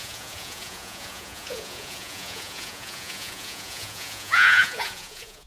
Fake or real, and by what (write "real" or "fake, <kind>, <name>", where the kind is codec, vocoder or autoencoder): fake, vocoder, Vocos